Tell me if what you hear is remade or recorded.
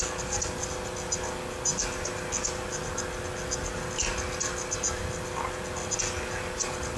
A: recorded